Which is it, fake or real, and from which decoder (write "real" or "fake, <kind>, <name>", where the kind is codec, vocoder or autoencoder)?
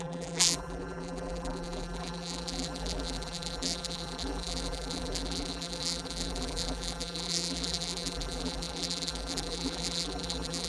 fake, vocoder, BigVGAN v2